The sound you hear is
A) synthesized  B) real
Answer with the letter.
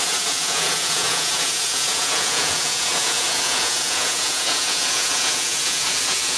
A